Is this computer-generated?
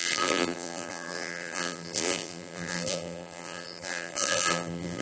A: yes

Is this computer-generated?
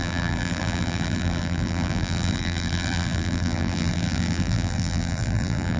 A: yes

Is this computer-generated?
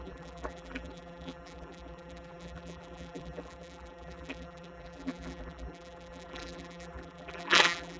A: yes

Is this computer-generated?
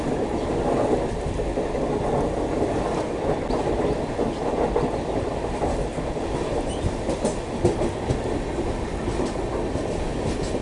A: no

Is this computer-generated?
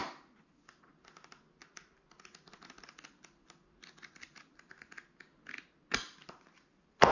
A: no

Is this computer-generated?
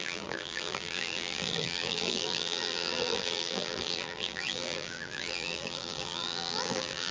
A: yes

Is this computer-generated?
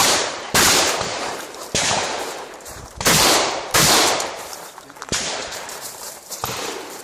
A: yes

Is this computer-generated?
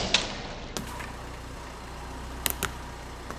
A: no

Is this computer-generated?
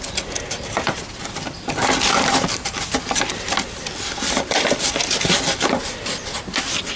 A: yes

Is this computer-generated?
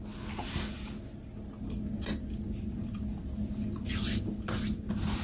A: no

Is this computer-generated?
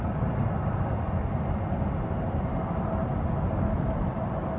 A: no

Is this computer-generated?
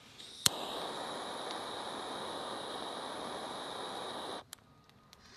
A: no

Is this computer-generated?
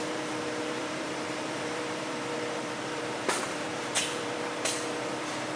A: yes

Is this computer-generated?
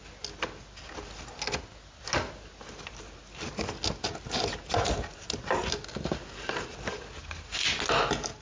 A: no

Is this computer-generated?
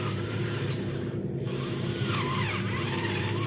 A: yes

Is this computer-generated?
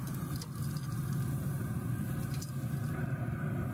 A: no